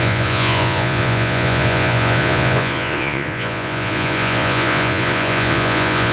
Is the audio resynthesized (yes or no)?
yes